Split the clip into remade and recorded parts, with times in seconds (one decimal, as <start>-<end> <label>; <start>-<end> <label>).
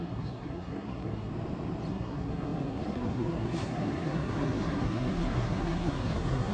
0.0-1.3 remade; 1.3-1.9 recorded; 1.9-6.5 remade